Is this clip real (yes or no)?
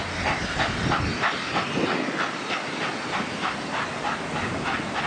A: yes